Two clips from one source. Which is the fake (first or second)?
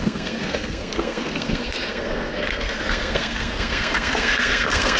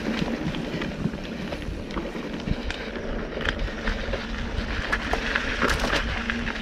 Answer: first